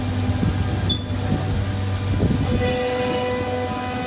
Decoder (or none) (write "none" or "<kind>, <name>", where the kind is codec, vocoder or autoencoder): none